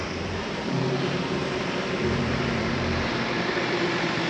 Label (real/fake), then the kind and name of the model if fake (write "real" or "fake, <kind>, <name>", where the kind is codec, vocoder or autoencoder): fake, vocoder, BigVGAN v2